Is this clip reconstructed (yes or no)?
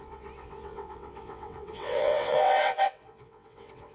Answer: yes